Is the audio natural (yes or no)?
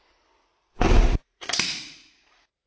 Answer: no